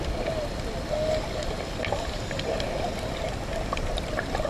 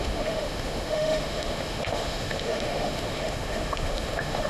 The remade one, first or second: second